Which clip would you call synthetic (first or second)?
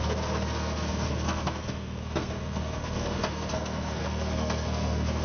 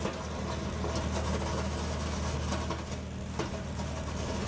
first